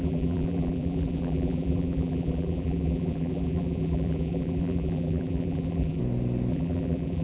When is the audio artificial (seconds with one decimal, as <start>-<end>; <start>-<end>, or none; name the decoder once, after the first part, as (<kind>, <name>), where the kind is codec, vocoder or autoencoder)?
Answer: 0.0-6.0 (vocoder, BigVGAN v2); 6.5-7.2